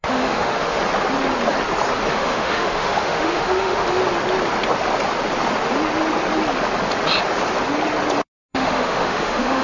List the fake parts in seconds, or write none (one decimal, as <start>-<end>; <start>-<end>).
0.0-0.8; 2.1-4.0; 8.5-9.6